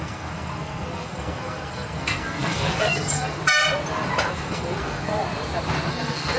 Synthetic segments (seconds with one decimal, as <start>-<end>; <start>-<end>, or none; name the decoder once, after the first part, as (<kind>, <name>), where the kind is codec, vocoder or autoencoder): 0.0-3.4 (codec, SNAC); 4.3-5.1; 5.9-6.4